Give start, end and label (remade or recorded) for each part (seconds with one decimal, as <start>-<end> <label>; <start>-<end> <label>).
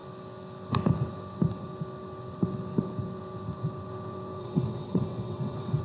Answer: 0.0-4.4 recorded; 4.4-5.8 remade